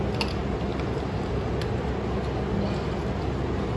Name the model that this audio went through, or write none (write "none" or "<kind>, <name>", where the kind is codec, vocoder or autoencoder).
none